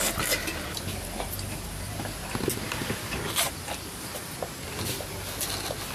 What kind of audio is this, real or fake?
real